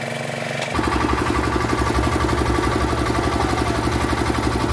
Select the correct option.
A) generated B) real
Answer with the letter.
B